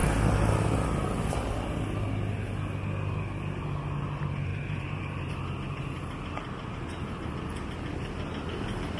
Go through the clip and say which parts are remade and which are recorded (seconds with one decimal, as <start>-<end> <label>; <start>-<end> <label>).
0.0-4.5 recorded; 4.5-5.3 remade; 5.3-9.0 recorded